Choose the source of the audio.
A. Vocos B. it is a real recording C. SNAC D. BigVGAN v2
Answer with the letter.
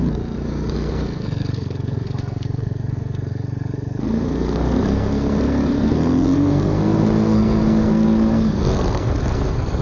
C